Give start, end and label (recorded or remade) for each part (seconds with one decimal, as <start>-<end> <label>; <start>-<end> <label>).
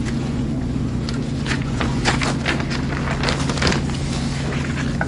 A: 0.0-2.2 remade; 2.2-5.1 recorded